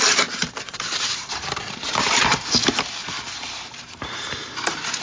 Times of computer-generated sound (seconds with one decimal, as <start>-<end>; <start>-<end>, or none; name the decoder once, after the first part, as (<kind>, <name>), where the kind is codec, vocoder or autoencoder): 0.0-2.6 (vocoder, BigVGAN v2); 3.3-5.0